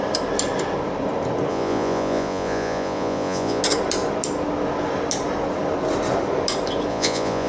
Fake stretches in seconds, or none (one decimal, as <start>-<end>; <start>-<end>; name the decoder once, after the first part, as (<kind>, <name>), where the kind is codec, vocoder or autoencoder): 1.5-3.6 (vocoder, Vocos); 6.9-7.5